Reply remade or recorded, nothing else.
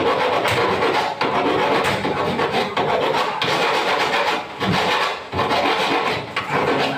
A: recorded